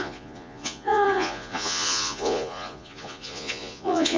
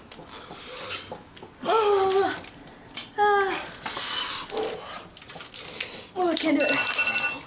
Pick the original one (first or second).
second